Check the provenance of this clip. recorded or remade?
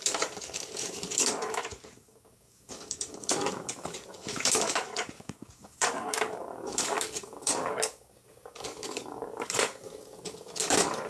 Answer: remade